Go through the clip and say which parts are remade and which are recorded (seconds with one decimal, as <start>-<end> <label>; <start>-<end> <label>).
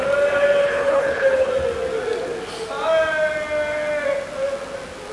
0.0-0.6 recorded; 0.6-1.5 remade; 1.5-5.1 recorded